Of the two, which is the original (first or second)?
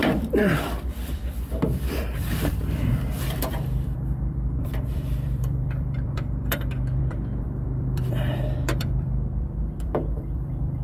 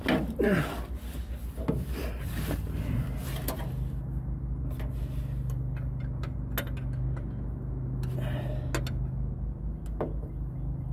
second